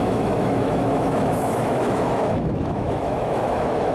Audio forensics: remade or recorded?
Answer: remade